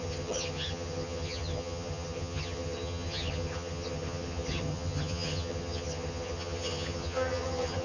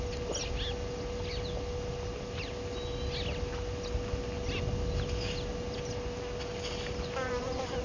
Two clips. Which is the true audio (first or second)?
second